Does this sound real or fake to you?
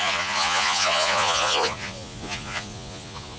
fake